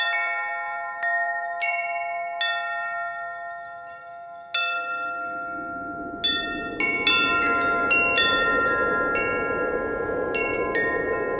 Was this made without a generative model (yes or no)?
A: yes